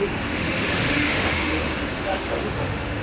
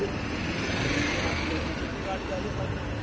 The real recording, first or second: second